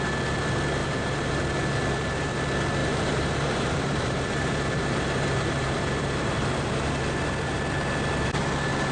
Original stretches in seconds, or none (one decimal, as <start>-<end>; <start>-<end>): 0.0-0.8; 1.3-2.8; 7.0-8.9